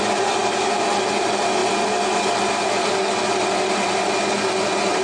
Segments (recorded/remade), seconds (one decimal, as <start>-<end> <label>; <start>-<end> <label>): 0.0-5.0 recorded